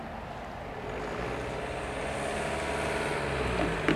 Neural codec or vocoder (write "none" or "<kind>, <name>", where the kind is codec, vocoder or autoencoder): none